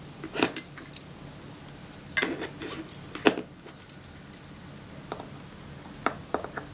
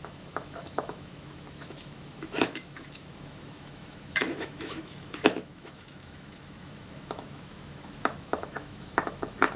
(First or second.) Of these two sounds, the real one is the first